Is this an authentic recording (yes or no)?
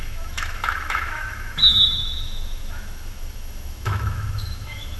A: no